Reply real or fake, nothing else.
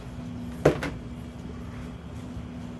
real